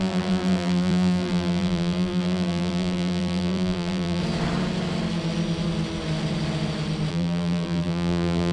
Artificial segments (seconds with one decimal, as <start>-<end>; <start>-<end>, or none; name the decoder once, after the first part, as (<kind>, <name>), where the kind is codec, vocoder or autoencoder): 0.0-4.2 (vocoder, BigVGAN v2); 7.1-8.5